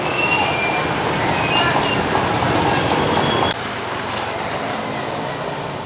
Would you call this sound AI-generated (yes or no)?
no